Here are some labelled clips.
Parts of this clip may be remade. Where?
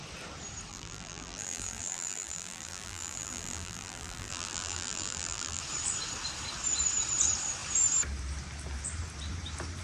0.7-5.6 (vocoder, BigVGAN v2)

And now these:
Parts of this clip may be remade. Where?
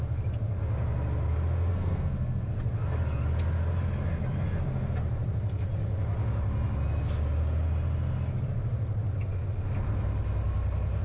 1.7-2.7 (codec, SNAC)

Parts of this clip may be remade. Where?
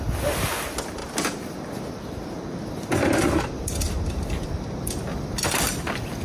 none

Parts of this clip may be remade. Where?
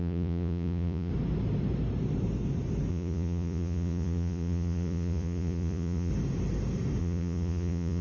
0.0-1.1 (vocoder, Vocos); 2.9-6.1; 7.0-8.0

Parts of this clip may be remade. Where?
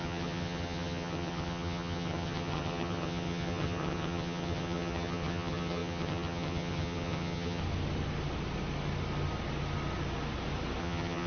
0.0-7.6 (vocoder, HiFi-GAN); 10.8-11.3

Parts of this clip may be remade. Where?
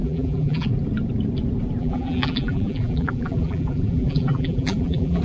0.0-0.7 (vocoder, BigVGAN v2); 1.8-5.2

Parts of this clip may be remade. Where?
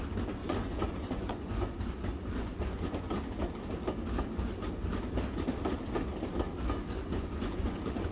0.4-1.8 (vocoder, Vocos); 2.4-3.1; 7.0-8.1